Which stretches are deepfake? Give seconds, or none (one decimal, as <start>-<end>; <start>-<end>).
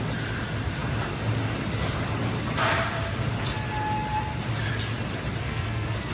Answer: 5.4-6.1